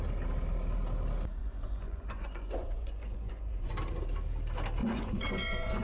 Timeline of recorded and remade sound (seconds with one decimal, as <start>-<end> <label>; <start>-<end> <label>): 0.0-1.4 recorded; 1.4-3.7 remade; 3.7-4.8 recorded; 4.8-5.8 remade